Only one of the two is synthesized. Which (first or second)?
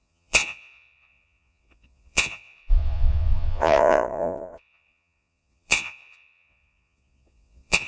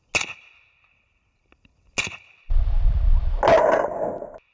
first